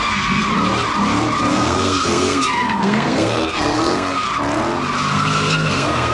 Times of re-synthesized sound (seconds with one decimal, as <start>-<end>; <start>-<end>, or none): 0.0-0.5; 1.5-4.3; 5.1-6.1